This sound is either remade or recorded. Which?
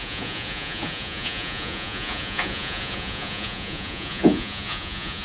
remade